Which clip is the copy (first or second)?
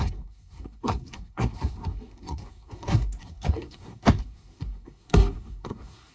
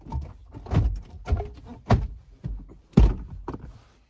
first